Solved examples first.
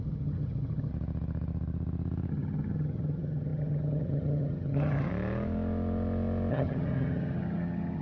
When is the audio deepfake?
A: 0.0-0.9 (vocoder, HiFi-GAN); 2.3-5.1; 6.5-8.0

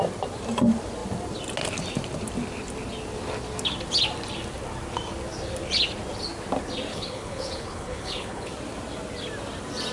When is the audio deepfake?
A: 6.9-8.5 (codec, HILCodec)

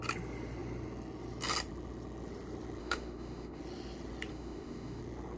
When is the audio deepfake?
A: 2.8-3.6 (autoencoder, DAC-VAE); 4.3-5.0